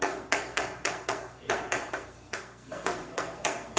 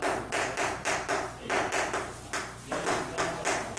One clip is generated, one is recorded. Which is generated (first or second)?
first